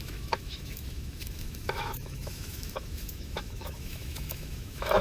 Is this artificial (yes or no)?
yes